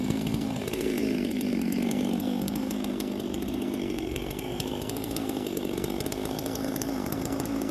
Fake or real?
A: fake